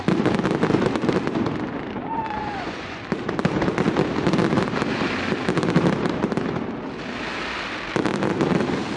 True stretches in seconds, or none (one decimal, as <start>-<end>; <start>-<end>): 0.0-2.0; 3.0-9.0